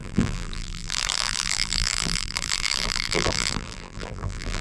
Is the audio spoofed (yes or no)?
yes